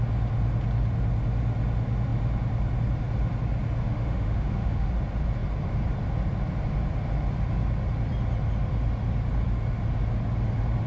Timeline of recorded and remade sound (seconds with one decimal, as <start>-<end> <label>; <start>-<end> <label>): 0.0-3.8 recorded; 3.8-4.9 remade; 4.9-10.9 recorded